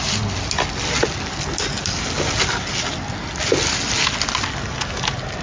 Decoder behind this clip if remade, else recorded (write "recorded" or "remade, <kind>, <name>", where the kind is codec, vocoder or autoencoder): recorded